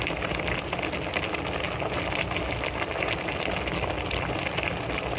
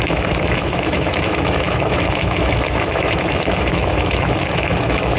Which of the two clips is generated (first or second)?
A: second